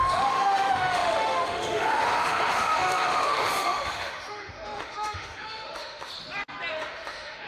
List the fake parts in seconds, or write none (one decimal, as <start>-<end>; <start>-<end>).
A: 0.0-6.1; 6.7-7.5